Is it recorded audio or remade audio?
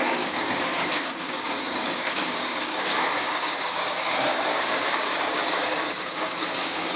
remade